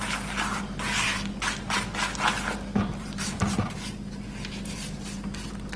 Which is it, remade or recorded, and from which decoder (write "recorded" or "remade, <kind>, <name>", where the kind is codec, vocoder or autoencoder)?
recorded